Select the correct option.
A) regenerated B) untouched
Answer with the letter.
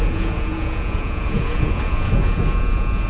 A